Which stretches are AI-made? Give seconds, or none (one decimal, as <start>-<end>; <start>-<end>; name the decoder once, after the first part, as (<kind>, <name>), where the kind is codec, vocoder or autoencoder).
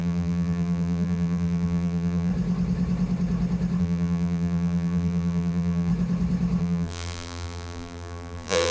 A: 0.0-2.3 (vocoder, BigVGAN v2); 3.8-5.9; 6.6-8.7